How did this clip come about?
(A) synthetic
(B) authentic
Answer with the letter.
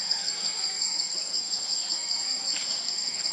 A